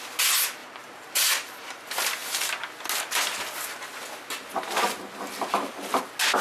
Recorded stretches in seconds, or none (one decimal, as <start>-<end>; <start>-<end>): 0.0-0.6; 1.7-6.4